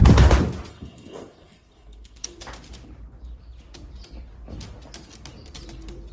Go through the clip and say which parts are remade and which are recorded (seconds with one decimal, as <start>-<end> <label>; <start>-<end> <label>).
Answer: 0.0-0.7 recorded; 0.7-2.4 remade; 2.4-6.1 recorded